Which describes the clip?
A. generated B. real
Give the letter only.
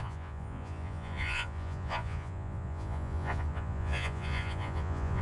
A